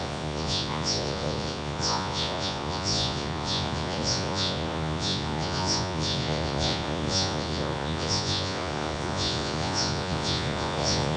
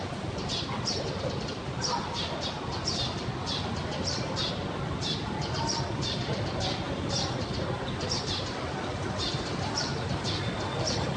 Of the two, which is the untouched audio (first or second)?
second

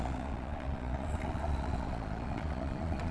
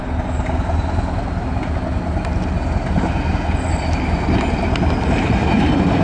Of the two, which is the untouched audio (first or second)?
second